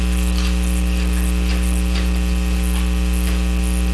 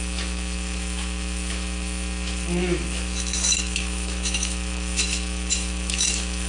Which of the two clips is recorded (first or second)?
first